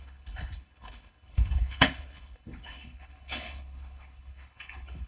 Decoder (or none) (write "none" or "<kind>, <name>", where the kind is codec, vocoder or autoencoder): codec, HILCodec